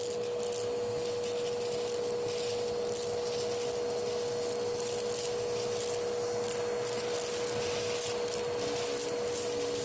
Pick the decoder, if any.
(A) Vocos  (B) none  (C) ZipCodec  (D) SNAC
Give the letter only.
B